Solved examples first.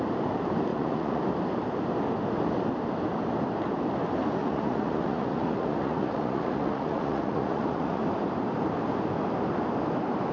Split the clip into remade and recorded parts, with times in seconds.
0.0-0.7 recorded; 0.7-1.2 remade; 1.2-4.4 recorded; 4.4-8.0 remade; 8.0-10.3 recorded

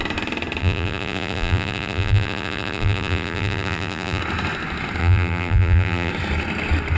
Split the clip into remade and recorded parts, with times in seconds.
0.0-0.6 recorded; 0.6-4.2 remade; 4.2-5.0 recorded; 5.0-6.1 remade; 6.1-7.0 recorded

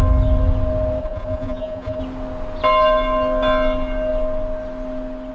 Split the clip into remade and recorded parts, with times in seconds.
0.0-1.0 recorded; 1.0-2.0 remade; 2.0-5.3 recorded